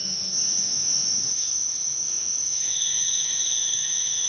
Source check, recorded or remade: remade